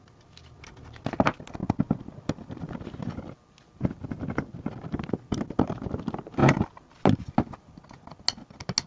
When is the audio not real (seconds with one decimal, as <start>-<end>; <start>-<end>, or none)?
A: none